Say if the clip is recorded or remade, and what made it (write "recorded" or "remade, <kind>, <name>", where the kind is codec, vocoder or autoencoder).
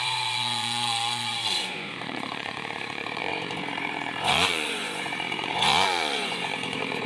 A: remade, vocoder, Vocos